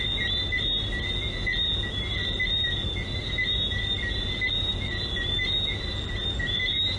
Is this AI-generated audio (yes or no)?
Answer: no